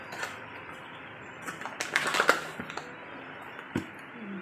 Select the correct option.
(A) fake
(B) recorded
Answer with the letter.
B